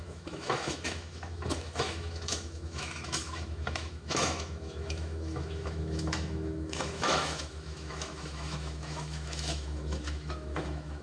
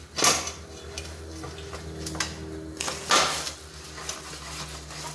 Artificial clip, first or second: first